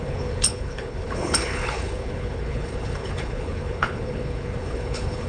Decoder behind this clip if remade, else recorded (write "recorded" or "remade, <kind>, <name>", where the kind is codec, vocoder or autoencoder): remade, codec, HILCodec